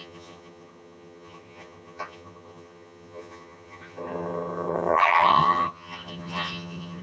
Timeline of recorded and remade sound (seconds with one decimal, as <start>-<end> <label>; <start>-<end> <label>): 0.0-7.0 remade